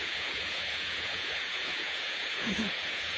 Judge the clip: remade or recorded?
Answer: remade